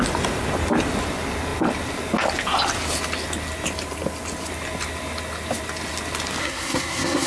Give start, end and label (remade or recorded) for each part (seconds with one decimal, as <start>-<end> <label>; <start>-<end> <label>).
0.0-6.4 recorded; 6.4-7.3 remade